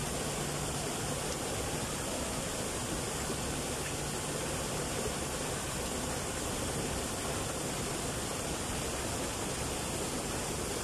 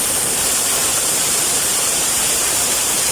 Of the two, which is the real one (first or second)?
first